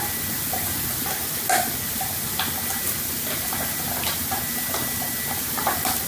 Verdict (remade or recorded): recorded